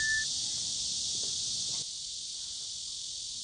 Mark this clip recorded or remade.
recorded